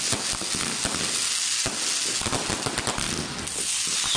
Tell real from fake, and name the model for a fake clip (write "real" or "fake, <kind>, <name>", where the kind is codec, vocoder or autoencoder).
real